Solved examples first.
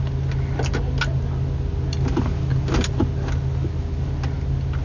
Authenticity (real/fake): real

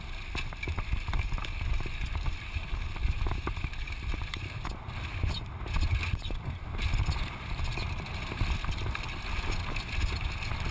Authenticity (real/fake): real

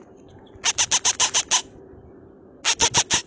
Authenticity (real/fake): real